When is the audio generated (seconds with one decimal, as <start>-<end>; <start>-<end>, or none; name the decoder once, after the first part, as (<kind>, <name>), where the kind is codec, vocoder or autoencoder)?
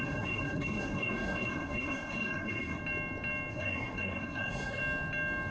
0.0-2.8 (codec, SNAC); 3.5-4.8